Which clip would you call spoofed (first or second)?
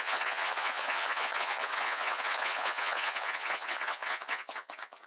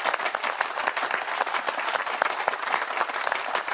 first